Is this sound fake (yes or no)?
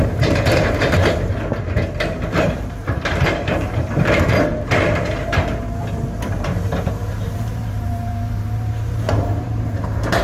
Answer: yes